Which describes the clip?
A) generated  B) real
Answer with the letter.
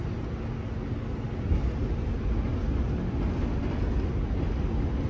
B